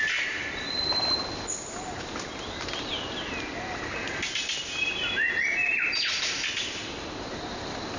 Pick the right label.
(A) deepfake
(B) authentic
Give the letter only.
B